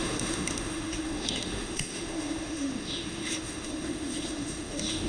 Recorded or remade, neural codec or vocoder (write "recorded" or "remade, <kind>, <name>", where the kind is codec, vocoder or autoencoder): remade, autoencoder, DAC-VAE